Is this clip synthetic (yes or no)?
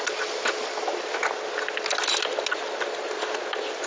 no